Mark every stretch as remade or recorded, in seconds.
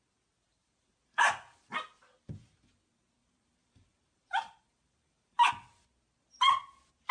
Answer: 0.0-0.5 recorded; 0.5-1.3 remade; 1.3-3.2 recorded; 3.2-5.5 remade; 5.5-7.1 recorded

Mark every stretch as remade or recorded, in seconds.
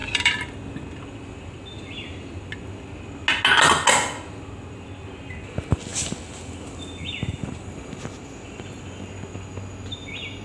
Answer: 0.0-2.5 remade; 2.5-10.4 recorded